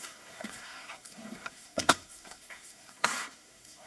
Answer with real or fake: fake